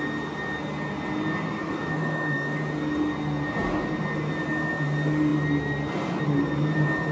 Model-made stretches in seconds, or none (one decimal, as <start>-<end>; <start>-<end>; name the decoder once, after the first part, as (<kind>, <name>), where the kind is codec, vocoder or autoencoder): 1.6-2.6 (autoencoder, DAC-VAE)